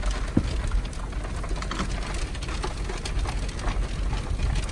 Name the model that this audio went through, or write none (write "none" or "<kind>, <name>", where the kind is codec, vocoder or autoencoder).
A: none